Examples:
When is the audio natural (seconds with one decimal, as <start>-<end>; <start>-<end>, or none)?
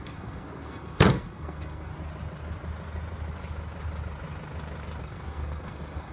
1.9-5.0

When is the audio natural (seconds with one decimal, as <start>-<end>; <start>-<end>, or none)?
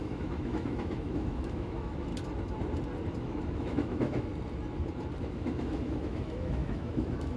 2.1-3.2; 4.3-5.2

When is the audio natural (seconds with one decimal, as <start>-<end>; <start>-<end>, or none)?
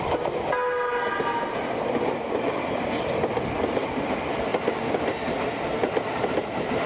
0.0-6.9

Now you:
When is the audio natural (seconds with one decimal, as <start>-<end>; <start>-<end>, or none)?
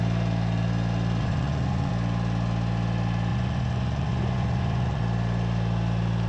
0.0-1.2; 1.9-3.3; 5.0-6.3